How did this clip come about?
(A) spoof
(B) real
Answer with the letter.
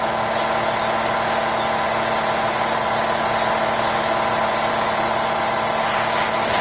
B